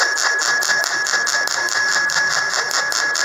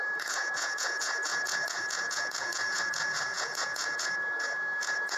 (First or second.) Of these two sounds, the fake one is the second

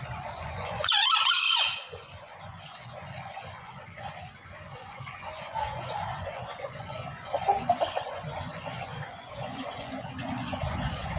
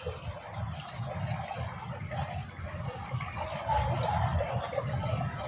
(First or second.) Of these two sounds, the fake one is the first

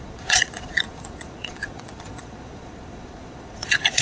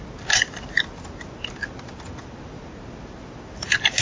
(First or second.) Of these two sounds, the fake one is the first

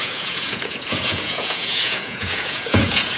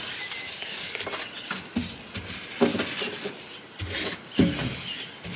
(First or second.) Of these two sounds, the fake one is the first